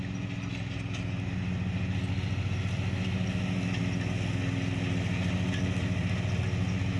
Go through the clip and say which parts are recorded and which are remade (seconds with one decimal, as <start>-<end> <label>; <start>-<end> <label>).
0.0-7.0 recorded